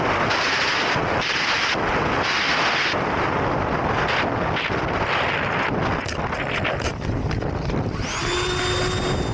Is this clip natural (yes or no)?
yes